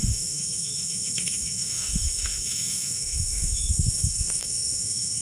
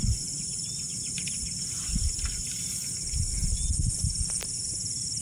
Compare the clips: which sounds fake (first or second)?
first